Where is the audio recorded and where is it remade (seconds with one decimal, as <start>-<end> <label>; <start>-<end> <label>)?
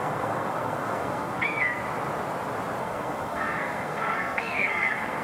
0.0-1.8 remade; 1.8-2.8 recorded; 2.8-5.2 remade